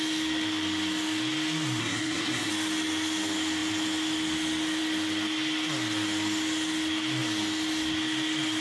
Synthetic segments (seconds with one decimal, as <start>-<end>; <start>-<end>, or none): 1.8-2.5

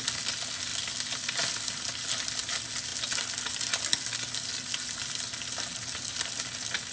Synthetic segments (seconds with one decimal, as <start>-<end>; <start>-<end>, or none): none